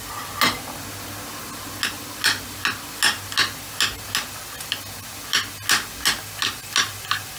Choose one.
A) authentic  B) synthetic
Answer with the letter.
A